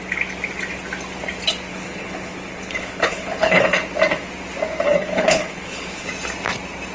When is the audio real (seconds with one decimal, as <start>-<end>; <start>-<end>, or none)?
0.0-1.7; 3.8-4.9; 6.1-6.9